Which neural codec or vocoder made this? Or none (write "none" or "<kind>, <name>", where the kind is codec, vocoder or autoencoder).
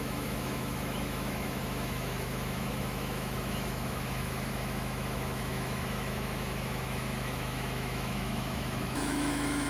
autoencoder, DAC-VAE